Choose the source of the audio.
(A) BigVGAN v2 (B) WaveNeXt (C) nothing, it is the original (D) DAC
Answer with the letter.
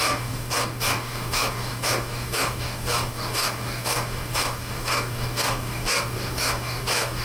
D